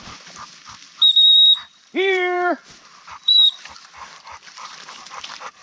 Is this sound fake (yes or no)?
yes